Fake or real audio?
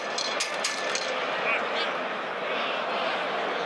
real